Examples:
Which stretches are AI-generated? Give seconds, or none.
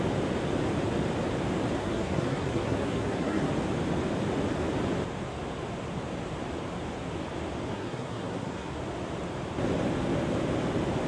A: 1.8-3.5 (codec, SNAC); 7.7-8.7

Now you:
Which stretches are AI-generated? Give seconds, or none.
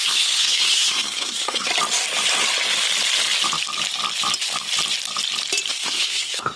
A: 0.0-1.7 (codec, SNAC); 5.7-6.6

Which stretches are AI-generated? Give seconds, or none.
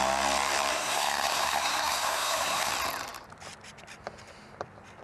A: 0.7-2.7 (codec, SNAC)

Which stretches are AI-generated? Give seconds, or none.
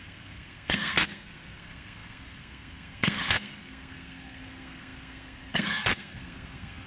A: 0.0-6.9 (codec, SNAC)